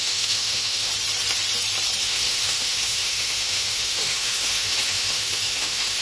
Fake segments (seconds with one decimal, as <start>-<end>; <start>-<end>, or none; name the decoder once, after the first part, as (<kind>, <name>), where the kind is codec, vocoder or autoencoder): 0.0-0.9 (autoencoder, DAC-VAE); 2.0-6.0